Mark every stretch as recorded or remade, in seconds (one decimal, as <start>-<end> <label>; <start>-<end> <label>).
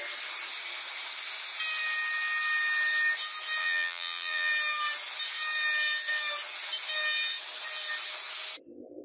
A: 0.0-3.6 recorded; 3.6-4.5 remade; 4.5-9.0 recorded